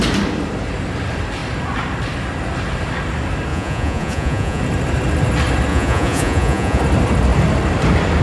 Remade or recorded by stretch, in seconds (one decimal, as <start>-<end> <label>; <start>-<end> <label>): 0.0-3.5 recorded; 3.5-4.6 remade; 4.6-5.7 recorded; 5.7-6.8 remade; 6.8-8.2 recorded